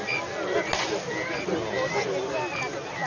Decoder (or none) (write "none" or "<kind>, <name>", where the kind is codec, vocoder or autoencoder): none